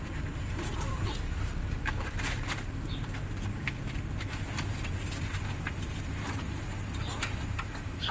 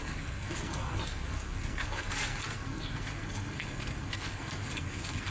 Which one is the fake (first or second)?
second